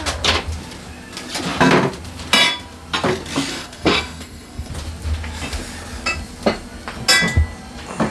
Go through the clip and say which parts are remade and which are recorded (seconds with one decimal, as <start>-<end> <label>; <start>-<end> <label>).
0.0-3.5 recorded; 3.5-4.7 remade; 4.7-8.1 recorded